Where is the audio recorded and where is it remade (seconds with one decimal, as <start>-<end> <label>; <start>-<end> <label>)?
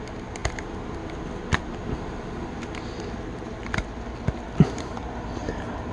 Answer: 0.0-5.9 recorded